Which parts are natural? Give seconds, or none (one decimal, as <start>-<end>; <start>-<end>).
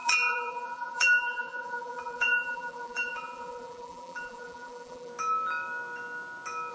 5.1-6.7